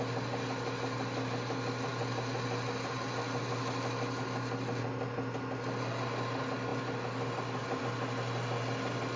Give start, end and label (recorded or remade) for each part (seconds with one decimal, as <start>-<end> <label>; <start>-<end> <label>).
0.0-9.2 recorded